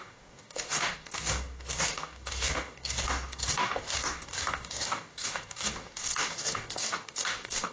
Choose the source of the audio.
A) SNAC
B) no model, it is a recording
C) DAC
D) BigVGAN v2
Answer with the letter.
C